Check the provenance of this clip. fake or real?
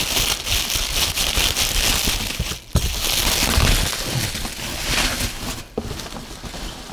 real